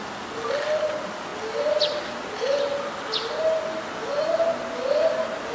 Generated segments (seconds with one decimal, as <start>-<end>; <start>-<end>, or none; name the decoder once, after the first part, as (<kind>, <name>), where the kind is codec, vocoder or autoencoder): none

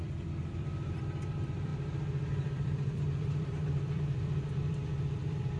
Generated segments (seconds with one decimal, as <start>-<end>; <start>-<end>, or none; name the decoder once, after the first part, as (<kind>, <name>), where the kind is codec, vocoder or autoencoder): 0.0-1.7 (vocoder, BigVGAN v2); 2.3-5.6

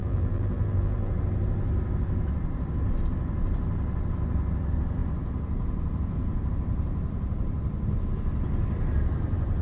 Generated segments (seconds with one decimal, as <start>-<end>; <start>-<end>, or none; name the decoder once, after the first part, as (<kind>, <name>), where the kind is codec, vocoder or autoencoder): 0.0-1.1 (vocoder, BigVGAN v2)

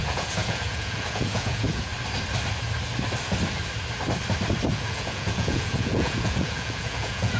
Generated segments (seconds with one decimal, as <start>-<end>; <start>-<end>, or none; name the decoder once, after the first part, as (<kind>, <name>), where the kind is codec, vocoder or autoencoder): 0.0-1.9 (vocoder, Vocos); 4.7-7.4